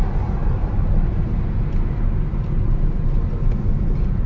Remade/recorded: recorded